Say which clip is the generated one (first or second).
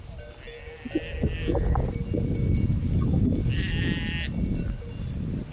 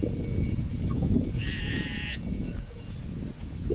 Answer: second